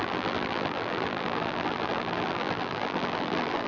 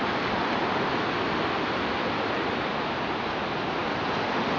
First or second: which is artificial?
first